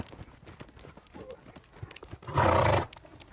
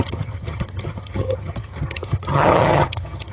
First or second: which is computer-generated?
second